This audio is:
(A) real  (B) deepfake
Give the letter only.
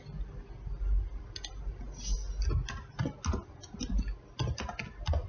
A